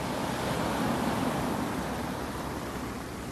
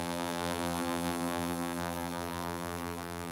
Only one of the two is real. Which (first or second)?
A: first